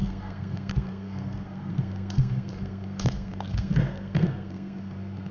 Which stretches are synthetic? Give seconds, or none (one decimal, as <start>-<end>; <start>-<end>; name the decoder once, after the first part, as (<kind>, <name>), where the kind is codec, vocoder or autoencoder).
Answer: 0.0-5.3 (codec, SNAC)